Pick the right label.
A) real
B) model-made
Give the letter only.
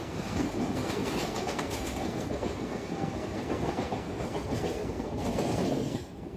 B